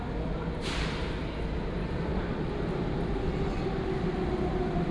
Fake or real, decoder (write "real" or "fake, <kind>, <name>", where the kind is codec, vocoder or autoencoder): real